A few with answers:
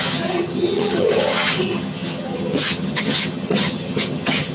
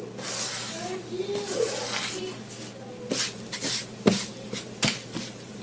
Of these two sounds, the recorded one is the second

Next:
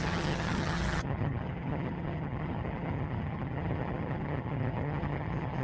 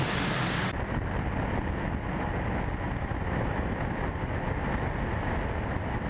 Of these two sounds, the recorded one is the second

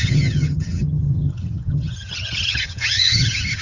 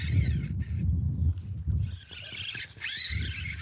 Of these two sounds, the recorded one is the second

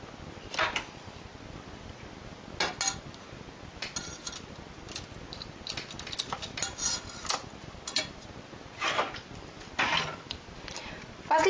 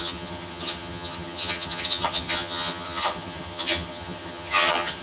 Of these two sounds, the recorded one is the first